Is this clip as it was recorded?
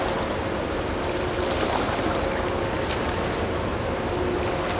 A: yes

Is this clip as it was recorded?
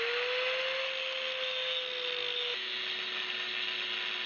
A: yes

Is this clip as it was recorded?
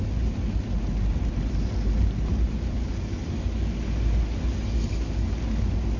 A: yes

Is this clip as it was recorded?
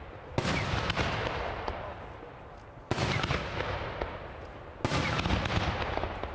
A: yes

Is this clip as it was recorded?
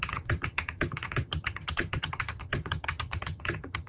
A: no